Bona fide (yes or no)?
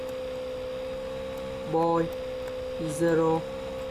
yes